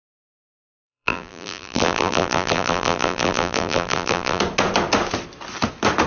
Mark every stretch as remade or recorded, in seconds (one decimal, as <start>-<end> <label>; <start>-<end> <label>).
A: 0.0-0.7 recorded; 0.7-4.4 remade; 4.4-6.1 recorded